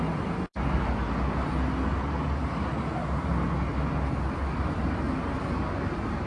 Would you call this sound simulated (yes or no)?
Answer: no